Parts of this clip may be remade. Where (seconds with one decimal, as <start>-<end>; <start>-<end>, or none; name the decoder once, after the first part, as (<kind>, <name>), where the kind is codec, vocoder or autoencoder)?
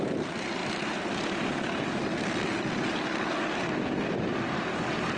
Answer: none